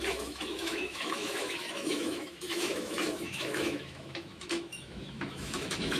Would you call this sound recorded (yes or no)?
no